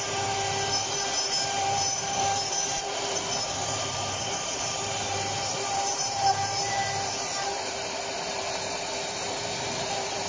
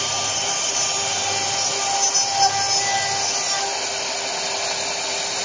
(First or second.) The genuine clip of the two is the second